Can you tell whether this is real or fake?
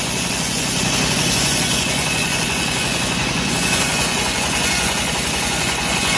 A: fake